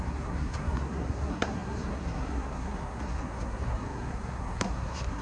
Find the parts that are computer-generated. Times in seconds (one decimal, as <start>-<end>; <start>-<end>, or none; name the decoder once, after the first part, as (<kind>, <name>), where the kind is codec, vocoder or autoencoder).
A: 0.0-5.2 (codec, SNAC)